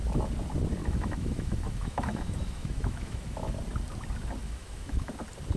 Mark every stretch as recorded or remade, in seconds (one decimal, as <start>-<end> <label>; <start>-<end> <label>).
0.0-0.8 recorded; 0.8-3.5 remade; 3.5-4.4 recorded; 4.4-5.1 remade; 5.1-5.6 recorded